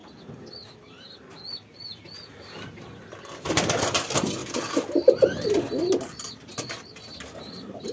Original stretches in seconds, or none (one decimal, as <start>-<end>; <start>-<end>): 0.0-7.9